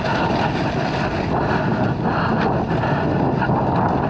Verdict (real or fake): real